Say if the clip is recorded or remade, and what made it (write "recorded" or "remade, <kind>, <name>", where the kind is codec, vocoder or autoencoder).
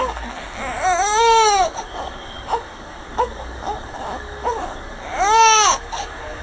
remade, codec, DAC